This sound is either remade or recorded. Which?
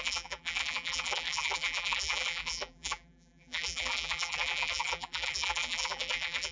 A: remade